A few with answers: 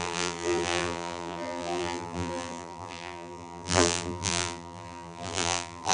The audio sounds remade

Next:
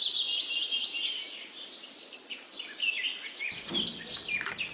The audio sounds recorded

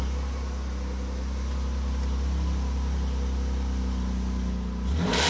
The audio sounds recorded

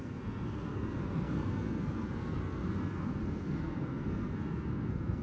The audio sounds remade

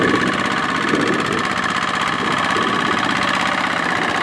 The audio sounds recorded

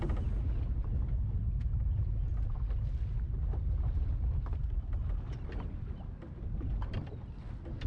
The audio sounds recorded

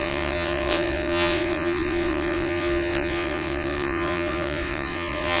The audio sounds remade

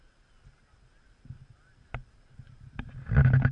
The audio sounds recorded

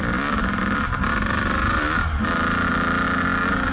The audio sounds recorded